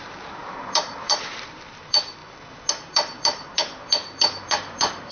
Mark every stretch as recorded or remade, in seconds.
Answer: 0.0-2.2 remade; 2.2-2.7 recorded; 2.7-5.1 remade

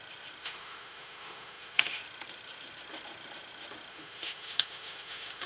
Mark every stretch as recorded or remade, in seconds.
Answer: 0.0-0.4 recorded; 0.4-2.0 remade; 2.0-3.9 recorded; 3.9-5.5 remade

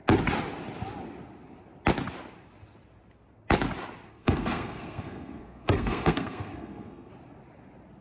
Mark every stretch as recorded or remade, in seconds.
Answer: 0.0-4.1 recorded; 4.1-7.1 remade; 7.1-8.0 recorded

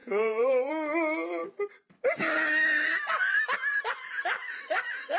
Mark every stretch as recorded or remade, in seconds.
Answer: 0.0-0.7 remade; 0.7-5.2 recorded

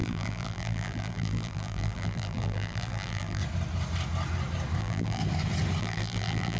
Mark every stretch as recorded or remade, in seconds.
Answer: 0.0-3.4 remade; 3.4-4.8 recorded; 4.8-5.2 remade; 5.2-5.8 recorded; 5.8-6.6 remade

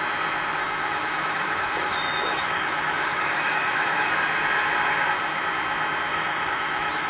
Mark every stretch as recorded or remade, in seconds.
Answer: 0.0-0.6 recorded; 0.6-4.1 remade; 4.1-6.1 recorded; 6.1-7.1 remade

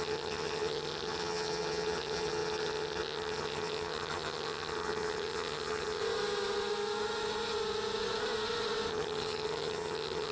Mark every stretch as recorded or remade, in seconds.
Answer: 0.0-6.0 remade; 6.0-8.9 recorded; 8.9-10.3 remade

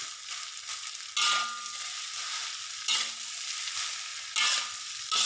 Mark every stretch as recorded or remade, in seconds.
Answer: 0.0-5.3 recorded